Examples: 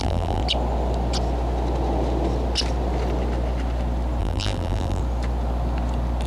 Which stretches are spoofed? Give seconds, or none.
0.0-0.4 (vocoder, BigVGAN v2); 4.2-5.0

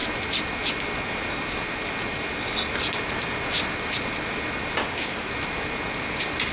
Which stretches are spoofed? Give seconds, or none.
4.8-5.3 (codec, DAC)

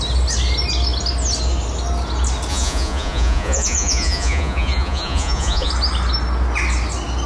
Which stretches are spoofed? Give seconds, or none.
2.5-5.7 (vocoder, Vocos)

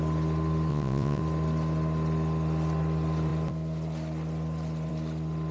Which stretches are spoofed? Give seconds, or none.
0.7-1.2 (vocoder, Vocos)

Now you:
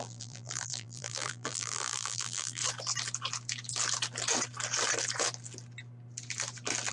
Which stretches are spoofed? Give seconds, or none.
0.0-2.6 (vocoder, BigVGAN v2)

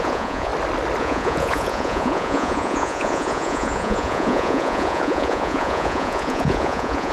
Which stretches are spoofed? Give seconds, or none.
0.0-0.5 (vocoder, Vocos); 1.0-7.1